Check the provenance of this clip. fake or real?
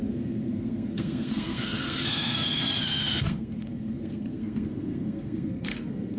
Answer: fake